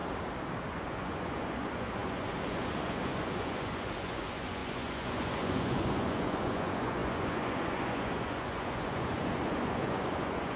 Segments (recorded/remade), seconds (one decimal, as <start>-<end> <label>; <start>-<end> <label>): 0.0-0.7 recorded; 0.7-10.6 remade